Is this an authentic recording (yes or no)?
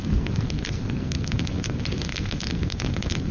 no